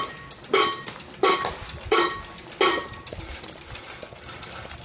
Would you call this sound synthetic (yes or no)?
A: no